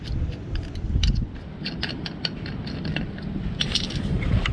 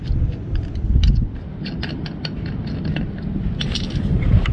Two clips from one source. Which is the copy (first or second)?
first